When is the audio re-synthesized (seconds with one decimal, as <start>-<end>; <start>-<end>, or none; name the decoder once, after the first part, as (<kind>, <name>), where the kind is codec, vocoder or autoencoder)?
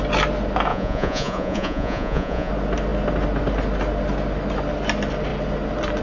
0.7-2.5 (vocoder, Vocos)